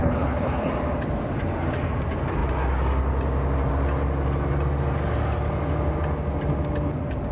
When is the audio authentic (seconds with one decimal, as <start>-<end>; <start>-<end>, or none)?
0.7-7.3